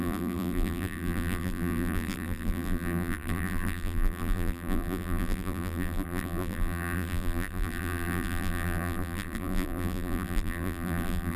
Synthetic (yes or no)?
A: yes